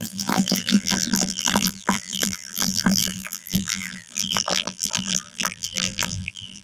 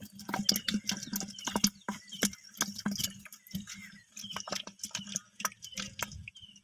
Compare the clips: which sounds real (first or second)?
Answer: second